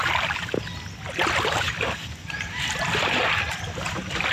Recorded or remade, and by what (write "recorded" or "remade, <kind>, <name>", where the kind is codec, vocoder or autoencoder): recorded